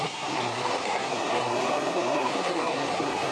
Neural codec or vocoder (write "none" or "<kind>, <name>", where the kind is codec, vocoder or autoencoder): codec, SNAC